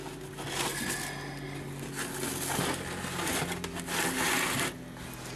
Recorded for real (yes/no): yes